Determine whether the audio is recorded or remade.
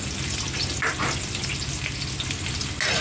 recorded